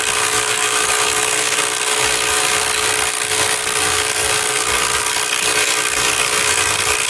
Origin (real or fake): fake